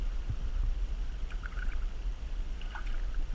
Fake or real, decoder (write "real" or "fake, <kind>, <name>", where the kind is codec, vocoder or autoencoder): real